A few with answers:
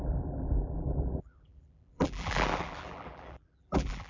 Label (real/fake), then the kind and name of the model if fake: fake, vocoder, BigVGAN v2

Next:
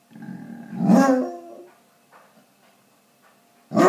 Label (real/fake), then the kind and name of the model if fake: real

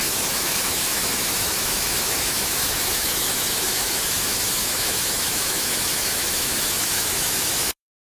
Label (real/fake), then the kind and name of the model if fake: fake, autoencoder, DAC-VAE